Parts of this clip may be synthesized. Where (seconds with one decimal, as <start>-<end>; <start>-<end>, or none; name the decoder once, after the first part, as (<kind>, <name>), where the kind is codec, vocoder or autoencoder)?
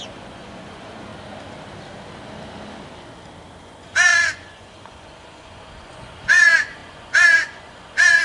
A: 0.0-1.1 (vocoder, Vocos); 3.6-8.2